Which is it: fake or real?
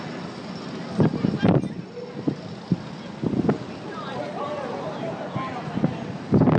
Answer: real